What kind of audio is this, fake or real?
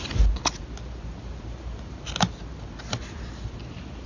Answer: real